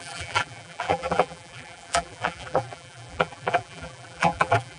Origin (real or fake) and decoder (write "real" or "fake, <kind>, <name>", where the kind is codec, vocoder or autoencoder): fake, vocoder, BigVGAN v2